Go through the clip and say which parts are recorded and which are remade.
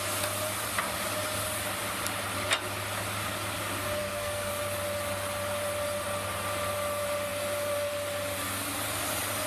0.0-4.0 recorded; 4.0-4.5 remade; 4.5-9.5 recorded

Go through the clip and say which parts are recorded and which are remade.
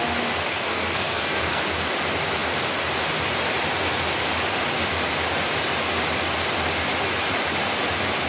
0.0-0.5 recorded; 0.5-1.6 remade; 1.6-8.3 recorded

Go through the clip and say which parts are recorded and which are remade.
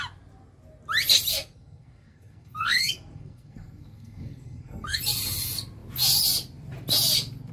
0.0-1.3 recorded; 1.3-5.0 remade; 5.0-7.5 recorded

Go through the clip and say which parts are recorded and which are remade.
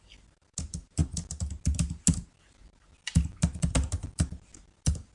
0.0-5.1 recorded